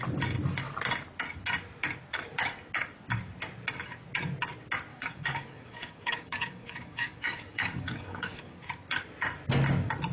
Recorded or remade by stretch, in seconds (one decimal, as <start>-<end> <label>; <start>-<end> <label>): 0.0-4.9 recorded; 4.9-8.6 remade; 8.6-10.1 recorded